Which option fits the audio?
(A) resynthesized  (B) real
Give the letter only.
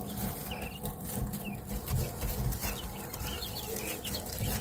B